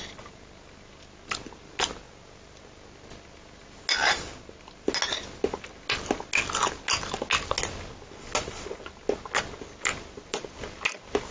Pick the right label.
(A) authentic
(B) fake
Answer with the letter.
A